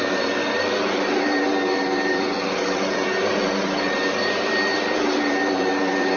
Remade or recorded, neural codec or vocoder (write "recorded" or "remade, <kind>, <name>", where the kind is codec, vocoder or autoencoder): remade, vocoder, BigVGAN v2